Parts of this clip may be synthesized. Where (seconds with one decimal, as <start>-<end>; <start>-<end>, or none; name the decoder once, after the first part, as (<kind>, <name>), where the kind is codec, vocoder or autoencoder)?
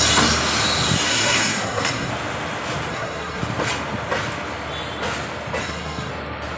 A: 1.1-2.1 (codec, SNAC); 2.9-3.4; 5.6-6.1